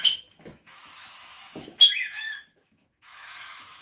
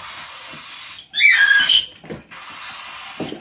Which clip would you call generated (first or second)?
first